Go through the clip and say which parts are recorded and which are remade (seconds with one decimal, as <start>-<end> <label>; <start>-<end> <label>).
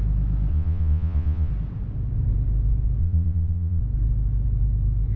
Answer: 0.0-0.5 recorded; 0.5-1.5 remade; 1.5-3.0 recorded; 3.0-3.8 remade; 3.8-5.2 recorded